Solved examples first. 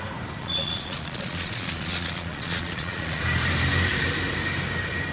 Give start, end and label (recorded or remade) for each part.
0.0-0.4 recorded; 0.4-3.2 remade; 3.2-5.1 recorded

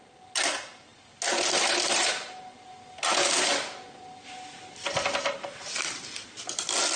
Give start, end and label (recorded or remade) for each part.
0.0-7.0 recorded

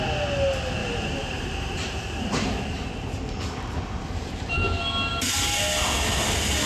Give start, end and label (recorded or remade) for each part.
0.0-0.8 recorded; 0.8-4.8 remade; 4.8-6.7 recorded

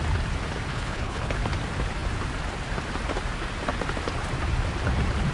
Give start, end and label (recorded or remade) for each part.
0.0-0.7 recorded; 0.7-1.3 remade; 1.3-5.3 recorded

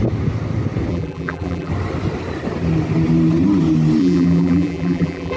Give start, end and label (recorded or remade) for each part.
0.0-0.9 recorded; 0.9-1.7 remade; 1.7-4.0 recorded; 4.0-5.4 remade

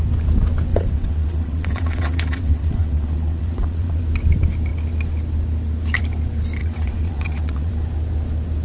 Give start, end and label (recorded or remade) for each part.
0.0-0.7 recorded; 0.7-4.0 remade; 4.0-6.6 recorded; 6.6-7.7 remade; 7.7-8.6 recorded

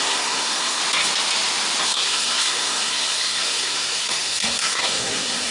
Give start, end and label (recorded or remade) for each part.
0.0-0.8 remade; 0.8-1.8 recorded; 1.8-5.5 remade

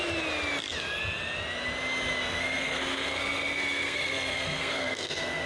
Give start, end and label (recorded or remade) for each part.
0.0-2.2 recorded; 2.2-5.5 remade